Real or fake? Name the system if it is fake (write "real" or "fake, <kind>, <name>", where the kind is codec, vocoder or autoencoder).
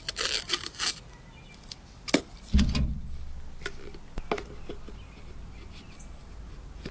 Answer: real